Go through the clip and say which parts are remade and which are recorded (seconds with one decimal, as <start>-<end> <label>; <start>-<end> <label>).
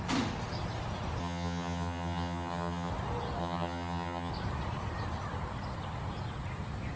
0.0-1.2 recorded; 1.2-2.9 remade; 2.9-3.4 recorded; 3.4-4.3 remade; 4.3-7.0 recorded